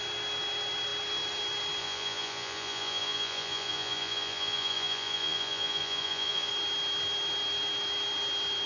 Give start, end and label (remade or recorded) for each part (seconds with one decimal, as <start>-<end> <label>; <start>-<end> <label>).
0.0-1.8 recorded; 1.8-6.5 remade; 6.5-8.7 recorded

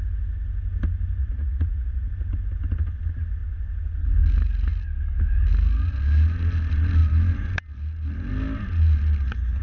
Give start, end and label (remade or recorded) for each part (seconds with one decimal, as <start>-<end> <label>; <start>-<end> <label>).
0.0-1.2 recorded; 1.2-2.1 remade; 2.1-9.6 recorded

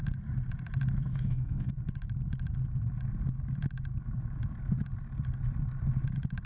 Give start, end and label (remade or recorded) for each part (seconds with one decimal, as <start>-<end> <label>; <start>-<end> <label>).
0.0-1.1 recorded; 1.1-1.7 remade; 1.7-6.5 recorded

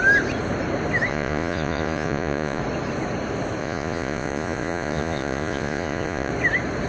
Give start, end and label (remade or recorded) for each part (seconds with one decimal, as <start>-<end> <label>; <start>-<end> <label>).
0.0-1.1 recorded; 1.1-2.6 remade; 2.6-3.6 recorded; 3.6-6.3 remade; 6.3-6.9 recorded